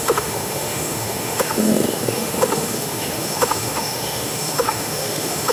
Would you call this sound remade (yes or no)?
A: yes